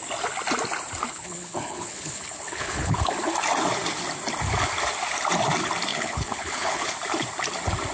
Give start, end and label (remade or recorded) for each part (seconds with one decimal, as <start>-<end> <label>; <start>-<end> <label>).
0.0-1.1 recorded; 1.1-3.1 remade; 3.1-5.9 recorded; 5.9-6.9 remade; 6.9-7.9 recorded